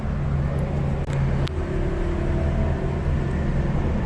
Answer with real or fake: real